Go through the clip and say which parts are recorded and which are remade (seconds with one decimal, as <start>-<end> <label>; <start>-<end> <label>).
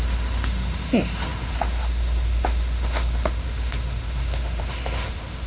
0.0-5.5 remade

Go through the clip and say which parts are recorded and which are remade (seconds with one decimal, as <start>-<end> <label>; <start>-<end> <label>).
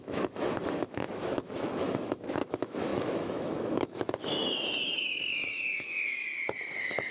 0.0-6.2 remade; 6.2-7.1 recorded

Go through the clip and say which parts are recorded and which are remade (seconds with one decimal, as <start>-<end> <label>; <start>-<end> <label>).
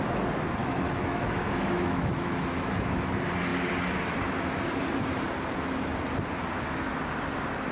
0.0-0.6 recorded; 0.6-3.0 remade; 3.0-7.7 recorded